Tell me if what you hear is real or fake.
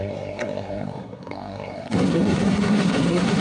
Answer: fake